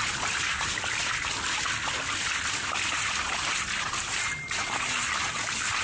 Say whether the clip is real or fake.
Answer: real